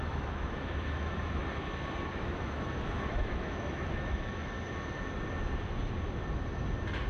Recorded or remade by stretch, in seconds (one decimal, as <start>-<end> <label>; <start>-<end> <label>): 0.0-1.4 remade; 1.4-2.1 recorded; 2.1-4.4 remade; 4.4-7.1 recorded